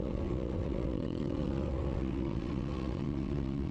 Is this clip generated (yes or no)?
yes